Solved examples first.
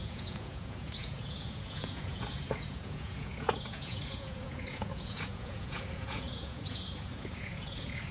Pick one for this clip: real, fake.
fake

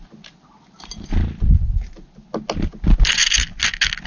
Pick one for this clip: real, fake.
real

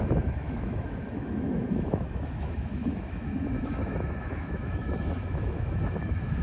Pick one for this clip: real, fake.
fake